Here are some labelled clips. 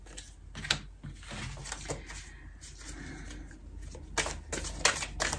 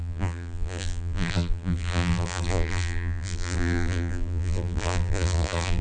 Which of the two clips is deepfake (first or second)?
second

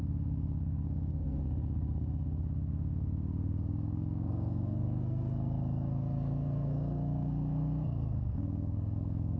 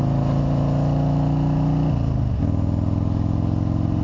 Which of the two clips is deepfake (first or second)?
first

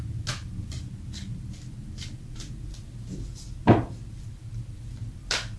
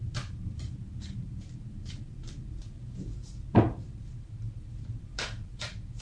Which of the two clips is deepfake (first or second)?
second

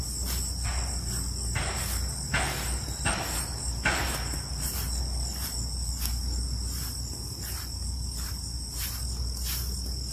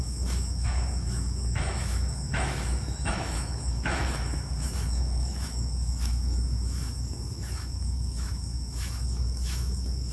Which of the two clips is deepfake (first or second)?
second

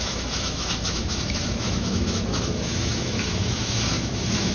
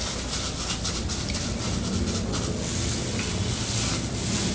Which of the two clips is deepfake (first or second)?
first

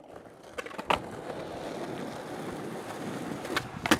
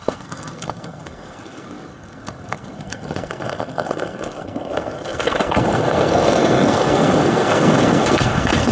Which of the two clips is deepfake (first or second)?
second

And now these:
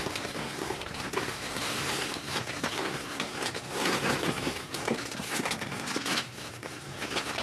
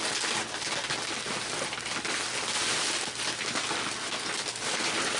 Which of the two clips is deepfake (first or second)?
first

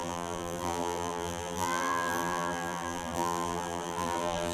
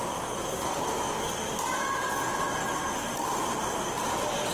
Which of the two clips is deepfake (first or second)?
first